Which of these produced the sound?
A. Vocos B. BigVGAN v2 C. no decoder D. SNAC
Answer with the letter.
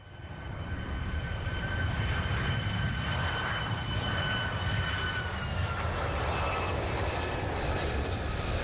B